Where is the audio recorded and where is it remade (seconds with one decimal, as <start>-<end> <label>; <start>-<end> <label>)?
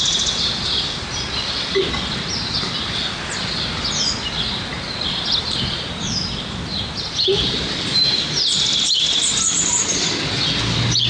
0.0-11.1 recorded